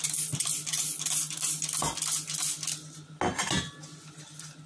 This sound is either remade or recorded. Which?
recorded